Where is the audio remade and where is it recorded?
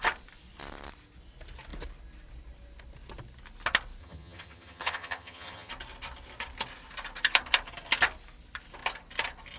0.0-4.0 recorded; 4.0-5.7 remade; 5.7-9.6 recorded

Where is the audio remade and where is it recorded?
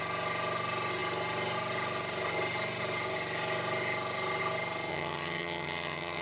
0.0-4.9 recorded; 4.9-6.2 remade